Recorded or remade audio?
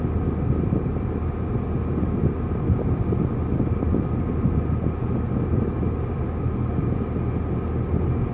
recorded